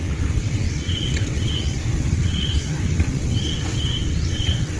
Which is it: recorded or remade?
remade